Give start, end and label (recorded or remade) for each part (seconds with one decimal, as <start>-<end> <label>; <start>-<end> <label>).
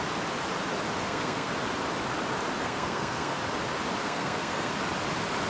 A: 0.0-1.0 recorded; 1.0-1.5 remade; 1.5-2.6 recorded; 2.6-3.4 remade; 3.4-4.0 recorded; 4.0-4.7 remade; 4.7-5.5 recorded